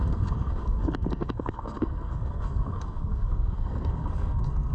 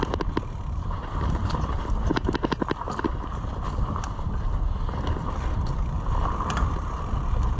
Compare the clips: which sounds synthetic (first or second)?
first